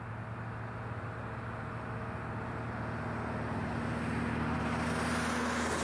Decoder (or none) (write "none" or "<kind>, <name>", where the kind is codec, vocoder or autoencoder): none